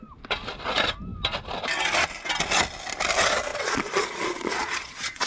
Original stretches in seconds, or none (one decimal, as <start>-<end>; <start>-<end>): 0.0-3.5